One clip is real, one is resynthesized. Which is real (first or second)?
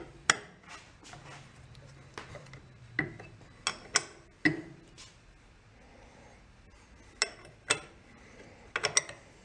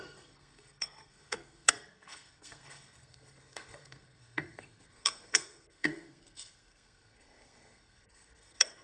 first